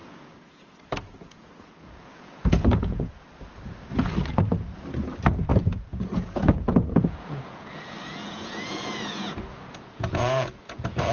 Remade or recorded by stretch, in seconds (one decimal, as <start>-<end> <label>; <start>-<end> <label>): 0.0-3.1 remade; 3.1-5.5 recorded; 5.5-11.1 remade

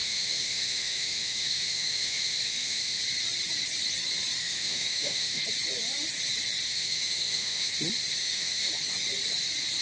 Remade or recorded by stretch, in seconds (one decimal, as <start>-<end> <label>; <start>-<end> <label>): 0.0-3.0 remade; 3.0-4.4 recorded; 4.4-5.4 remade; 5.4-6.7 recorded; 6.7-7.7 remade; 7.7-8.2 recorded; 8.2-8.7 remade; 8.7-9.8 recorded

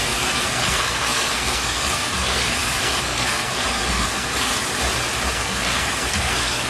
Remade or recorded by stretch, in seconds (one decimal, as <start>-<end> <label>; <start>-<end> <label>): 0.0-4.5 remade; 4.5-5.3 recorded; 5.3-6.7 remade

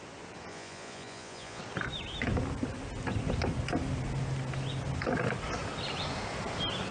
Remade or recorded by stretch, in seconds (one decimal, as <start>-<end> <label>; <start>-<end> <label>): 0.0-0.5 recorded; 0.5-1.6 remade; 1.6-6.9 recorded

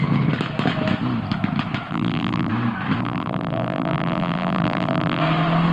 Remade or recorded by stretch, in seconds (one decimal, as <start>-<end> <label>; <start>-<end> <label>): 0.0-1.9 recorded; 1.9-2.5 remade; 2.5-3.0 recorded; 3.0-5.2 remade; 5.2-5.7 recorded